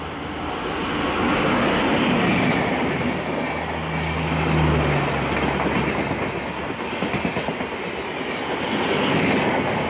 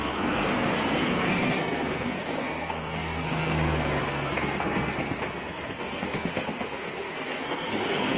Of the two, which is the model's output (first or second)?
second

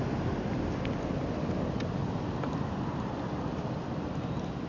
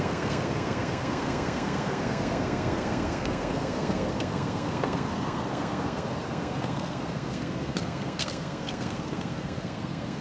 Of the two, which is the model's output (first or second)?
second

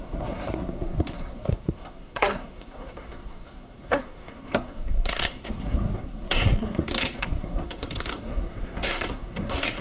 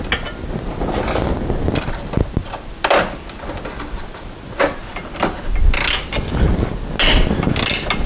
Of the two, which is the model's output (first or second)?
first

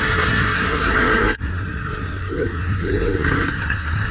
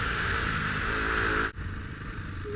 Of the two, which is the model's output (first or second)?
first